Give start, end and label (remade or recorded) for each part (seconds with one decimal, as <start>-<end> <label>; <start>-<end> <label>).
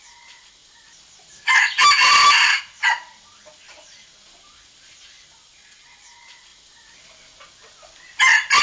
0.0-8.6 recorded